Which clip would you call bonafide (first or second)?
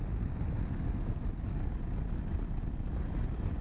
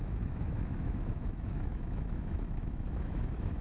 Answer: first